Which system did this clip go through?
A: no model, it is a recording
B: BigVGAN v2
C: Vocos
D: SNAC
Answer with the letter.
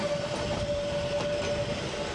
A